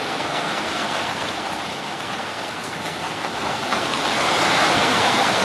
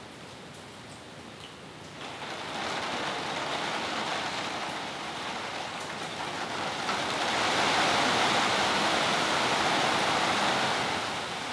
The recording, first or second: second